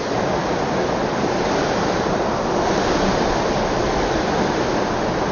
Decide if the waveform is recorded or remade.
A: recorded